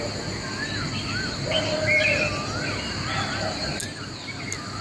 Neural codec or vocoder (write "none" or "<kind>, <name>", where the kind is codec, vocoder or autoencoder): none